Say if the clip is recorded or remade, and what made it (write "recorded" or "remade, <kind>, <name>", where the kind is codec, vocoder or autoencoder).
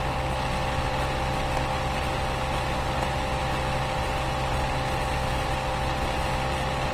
recorded